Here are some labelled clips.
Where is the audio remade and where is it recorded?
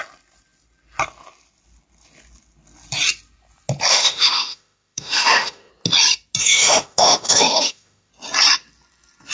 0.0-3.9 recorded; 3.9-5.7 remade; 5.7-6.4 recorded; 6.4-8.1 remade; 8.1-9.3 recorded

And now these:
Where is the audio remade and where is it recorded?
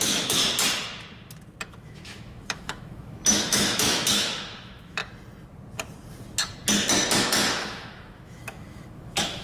0.0-0.4 remade; 0.4-1.7 recorded; 1.7-5.0 remade; 5.0-7.2 recorded; 7.2-9.4 remade